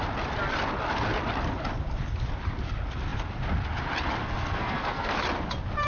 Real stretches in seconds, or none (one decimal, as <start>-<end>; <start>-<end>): 0.0-4.2; 5.1-5.9

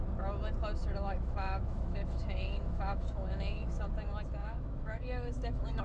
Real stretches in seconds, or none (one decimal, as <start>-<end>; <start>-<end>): 0.0-0.8; 3.9-4.4

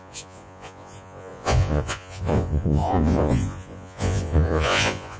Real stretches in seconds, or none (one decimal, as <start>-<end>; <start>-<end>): none

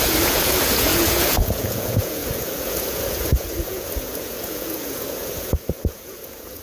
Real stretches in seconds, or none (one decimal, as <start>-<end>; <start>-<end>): none